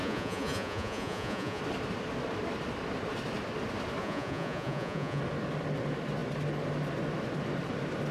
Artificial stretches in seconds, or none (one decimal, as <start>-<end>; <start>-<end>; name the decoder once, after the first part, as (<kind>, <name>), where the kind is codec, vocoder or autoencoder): 0.0-1.6 (vocoder, Vocos); 4.0-5.2